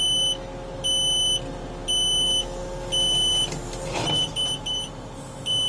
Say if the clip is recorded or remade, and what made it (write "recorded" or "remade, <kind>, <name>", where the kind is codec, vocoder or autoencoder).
recorded